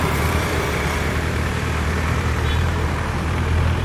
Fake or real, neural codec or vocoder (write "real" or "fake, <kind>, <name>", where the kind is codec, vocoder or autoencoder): fake, vocoder, BigVGAN v2